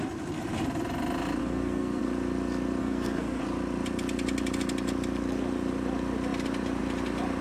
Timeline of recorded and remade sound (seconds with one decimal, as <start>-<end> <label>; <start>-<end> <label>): 0.0-1.4 recorded; 1.4-2.0 remade; 2.0-2.8 recorded; 2.8-3.4 remade; 3.4-7.4 recorded